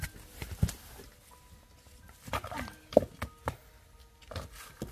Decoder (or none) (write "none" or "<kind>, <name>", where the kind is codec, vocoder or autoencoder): none